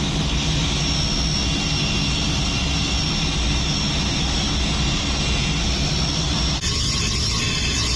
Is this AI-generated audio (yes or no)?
no